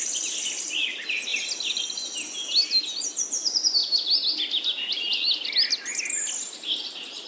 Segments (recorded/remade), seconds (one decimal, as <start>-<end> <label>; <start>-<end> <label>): 0.0-7.3 recorded